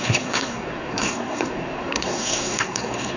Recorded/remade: remade